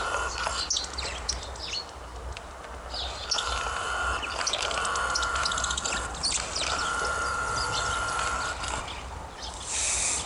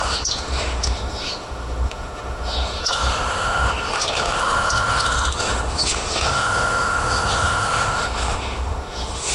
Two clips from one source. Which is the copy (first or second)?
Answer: second